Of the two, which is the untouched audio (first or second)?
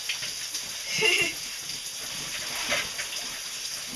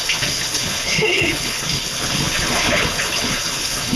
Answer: first